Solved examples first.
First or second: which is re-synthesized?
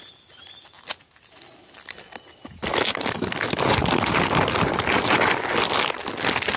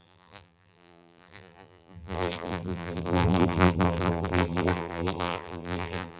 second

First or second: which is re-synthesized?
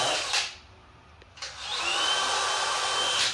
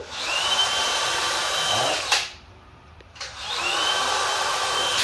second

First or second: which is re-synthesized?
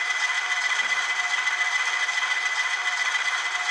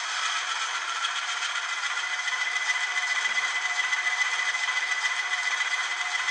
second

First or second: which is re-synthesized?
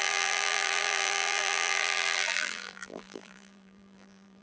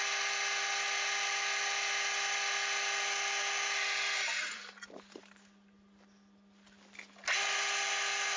first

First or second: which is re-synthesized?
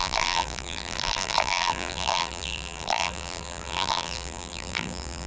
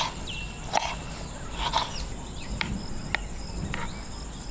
first